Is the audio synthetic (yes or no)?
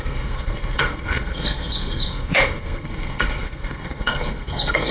yes